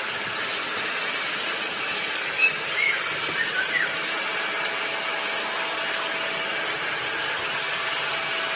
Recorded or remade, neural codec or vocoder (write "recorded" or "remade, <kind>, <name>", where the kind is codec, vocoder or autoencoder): recorded